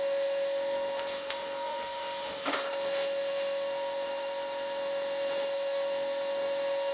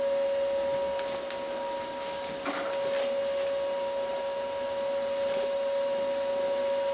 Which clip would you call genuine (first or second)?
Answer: second